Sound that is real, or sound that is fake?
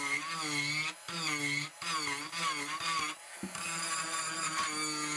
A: real